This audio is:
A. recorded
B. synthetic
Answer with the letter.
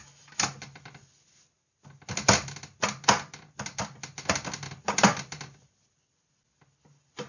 A